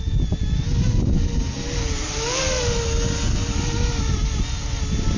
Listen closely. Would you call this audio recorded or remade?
recorded